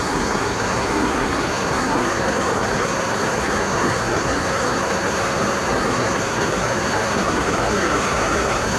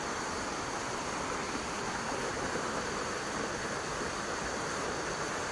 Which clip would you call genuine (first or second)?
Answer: second